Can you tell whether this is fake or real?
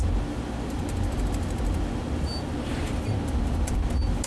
real